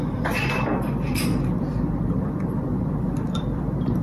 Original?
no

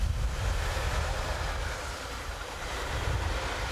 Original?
yes